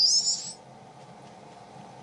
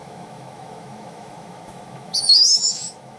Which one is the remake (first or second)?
second